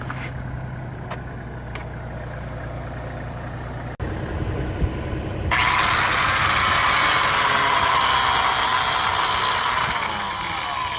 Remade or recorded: recorded